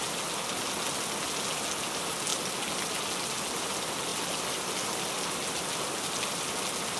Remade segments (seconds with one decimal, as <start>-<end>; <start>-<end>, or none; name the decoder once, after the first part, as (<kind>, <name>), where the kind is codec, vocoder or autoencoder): none